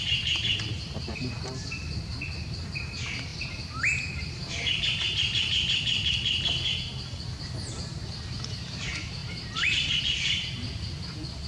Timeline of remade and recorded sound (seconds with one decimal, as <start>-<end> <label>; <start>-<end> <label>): 0.0-11.5 remade